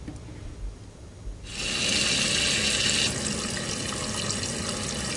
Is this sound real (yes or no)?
yes